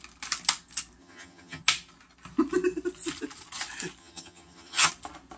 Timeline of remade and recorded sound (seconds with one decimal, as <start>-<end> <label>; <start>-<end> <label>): 0.0-1.0 recorded; 1.0-1.6 remade; 1.6-4.0 recorded; 4.0-4.9 remade; 4.9-5.4 recorded